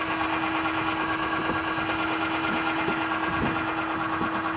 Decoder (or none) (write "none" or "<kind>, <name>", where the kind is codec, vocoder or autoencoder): none